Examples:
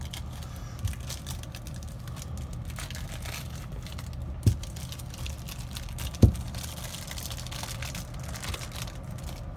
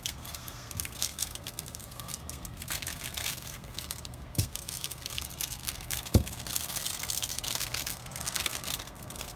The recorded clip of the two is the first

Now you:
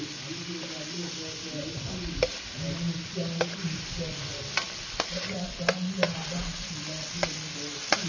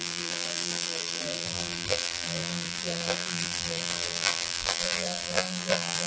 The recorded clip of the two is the first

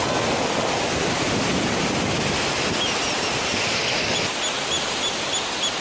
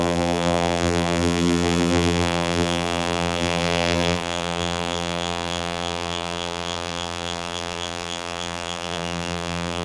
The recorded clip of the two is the first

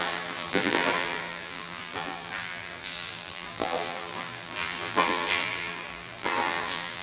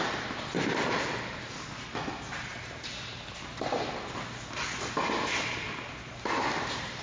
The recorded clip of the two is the second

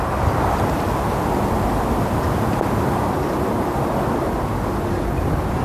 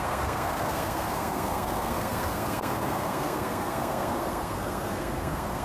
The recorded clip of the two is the first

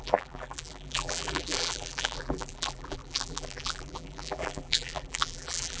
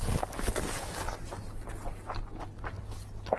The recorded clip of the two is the second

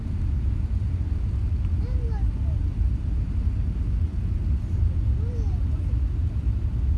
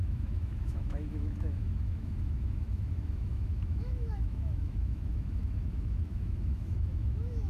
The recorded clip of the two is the first